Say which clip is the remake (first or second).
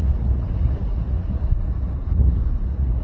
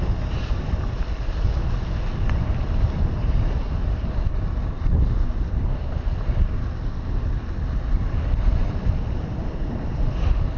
first